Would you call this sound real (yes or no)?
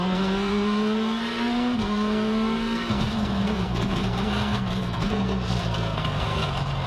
no